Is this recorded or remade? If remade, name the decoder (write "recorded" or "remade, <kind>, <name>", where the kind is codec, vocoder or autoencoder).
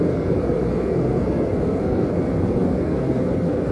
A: remade, codec, SNAC